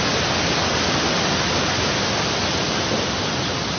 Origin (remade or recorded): recorded